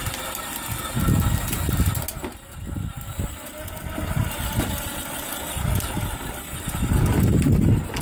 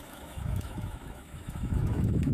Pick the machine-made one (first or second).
second